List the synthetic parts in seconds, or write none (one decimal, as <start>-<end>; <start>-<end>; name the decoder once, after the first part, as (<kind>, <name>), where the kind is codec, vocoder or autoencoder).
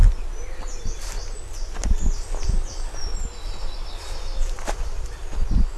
none